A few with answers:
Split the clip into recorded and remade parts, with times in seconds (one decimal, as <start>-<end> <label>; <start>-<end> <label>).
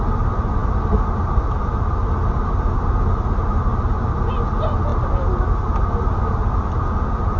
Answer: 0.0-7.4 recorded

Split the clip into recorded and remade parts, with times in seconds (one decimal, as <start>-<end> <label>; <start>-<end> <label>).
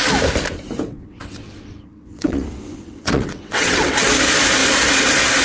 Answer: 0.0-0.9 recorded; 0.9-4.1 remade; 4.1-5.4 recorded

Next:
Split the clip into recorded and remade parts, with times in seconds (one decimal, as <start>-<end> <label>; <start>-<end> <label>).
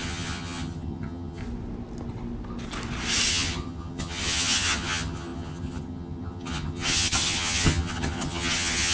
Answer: 0.0-1.4 remade; 1.4-3.3 recorded; 3.3-8.9 remade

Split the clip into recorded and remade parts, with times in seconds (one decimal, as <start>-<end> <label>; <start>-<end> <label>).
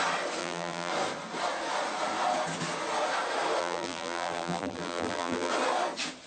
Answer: 0.0-0.4 recorded; 0.4-0.9 remade; 0.9-3.6 recorded; 3.6-5.5 remade; 5.5-6.3 recorded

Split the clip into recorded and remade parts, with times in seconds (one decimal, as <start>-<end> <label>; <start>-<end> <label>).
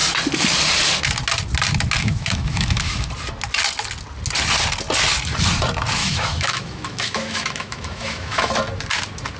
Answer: 0.0-2.0 recorded; 2.0-3.1 remade; 3.1-6.0 recorded; 6.0-8.5 remade; 8.5-9.4 recorded